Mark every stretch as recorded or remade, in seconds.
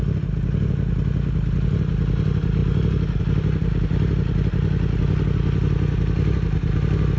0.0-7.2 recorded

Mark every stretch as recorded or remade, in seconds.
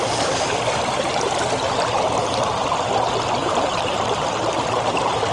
0.0-3.4 recorded; 3.4-4.0 remade; 4.0-5.3 recorded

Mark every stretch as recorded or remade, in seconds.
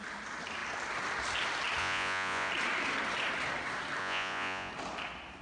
0.0-1.8 recorded; 1.8-2.5 remade; 2.5-4.0 recorded; 4.0-4.7 remade; 4.7-5.4 recorded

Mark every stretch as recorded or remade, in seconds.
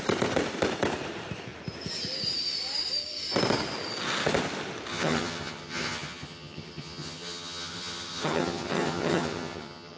0.0-4.9 recorded; 4.9-10.0 remade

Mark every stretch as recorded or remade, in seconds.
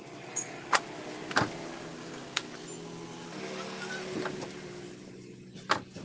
0.0-1.9 recorded; 1.9-2.5 remade; 2.5-6.0 recorded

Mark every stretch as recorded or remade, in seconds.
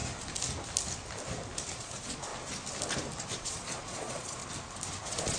0.0-1.7 recorded; 1.7-2.3 remade; 2.3-3.3 recorded; 3.3-4.4 remade; 4.4-5.0 recorded; 5.0-5.4 remade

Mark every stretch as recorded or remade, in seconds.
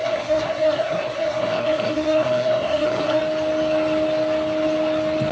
0.0-3.2 remade; 3.2-5.3 recorded